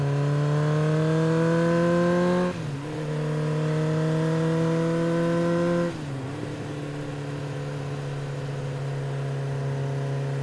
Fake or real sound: real